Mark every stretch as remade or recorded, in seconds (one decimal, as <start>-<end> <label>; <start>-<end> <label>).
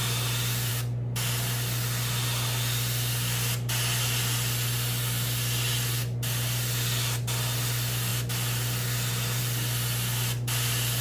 0.0-11.0 recorded